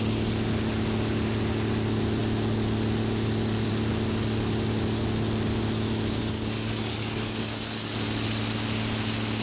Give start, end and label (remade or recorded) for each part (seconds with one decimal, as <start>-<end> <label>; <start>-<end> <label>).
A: 0.0-6.2 recorded; 6.2-7.9 remade; 7.9-9.4 recorded